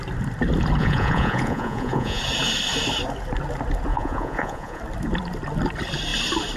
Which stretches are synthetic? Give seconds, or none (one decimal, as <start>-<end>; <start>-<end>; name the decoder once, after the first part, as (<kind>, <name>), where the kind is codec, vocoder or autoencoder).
0.8-2.2 (vocoder, Vocos); 3.9-4.8